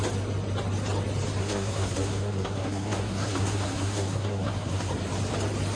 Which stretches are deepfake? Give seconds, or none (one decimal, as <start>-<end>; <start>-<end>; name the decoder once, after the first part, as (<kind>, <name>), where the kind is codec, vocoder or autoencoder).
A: 1.4-4.9 (codec, SNAC)